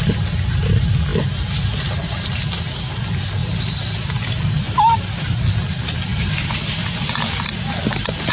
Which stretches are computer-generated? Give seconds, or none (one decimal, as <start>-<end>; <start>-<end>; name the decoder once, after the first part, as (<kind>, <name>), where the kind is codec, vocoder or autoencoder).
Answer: none